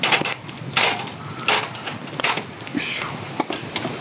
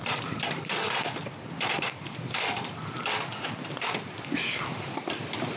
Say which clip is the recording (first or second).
first